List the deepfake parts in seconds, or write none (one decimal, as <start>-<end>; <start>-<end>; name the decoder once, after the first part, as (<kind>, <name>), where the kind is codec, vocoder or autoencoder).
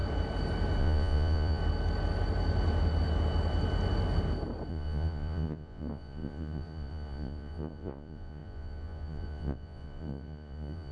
0.8-1.6 (vocoder, Vocos); 4.7-10.9